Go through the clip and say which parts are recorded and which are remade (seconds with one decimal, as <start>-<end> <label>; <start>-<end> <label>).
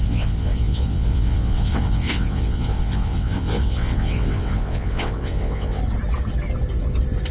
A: 0.0-5.8 remade; 5.8-7.3 recorded